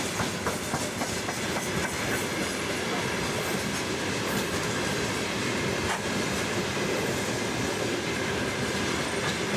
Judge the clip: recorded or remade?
recorded